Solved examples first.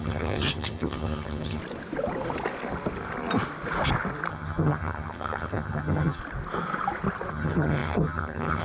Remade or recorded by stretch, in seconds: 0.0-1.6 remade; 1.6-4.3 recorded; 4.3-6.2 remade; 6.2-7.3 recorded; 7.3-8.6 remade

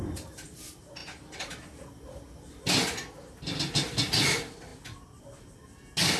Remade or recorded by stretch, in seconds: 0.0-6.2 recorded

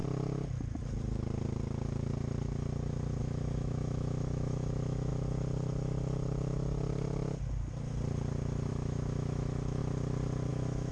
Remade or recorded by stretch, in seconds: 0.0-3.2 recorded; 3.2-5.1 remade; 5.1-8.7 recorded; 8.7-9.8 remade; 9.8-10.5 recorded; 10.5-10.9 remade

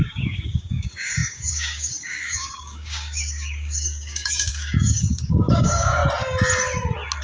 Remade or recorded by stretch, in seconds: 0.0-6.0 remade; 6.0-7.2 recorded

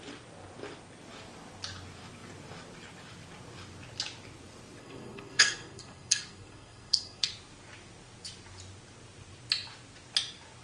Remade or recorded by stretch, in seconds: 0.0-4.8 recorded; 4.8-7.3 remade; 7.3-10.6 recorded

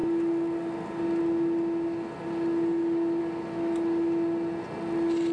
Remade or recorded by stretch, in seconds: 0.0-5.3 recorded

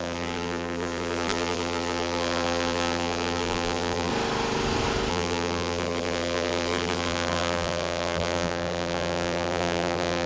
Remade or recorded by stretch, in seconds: 0.0-4.1 remade; 4.1-5.1 recorded; 5.1-10.3 remade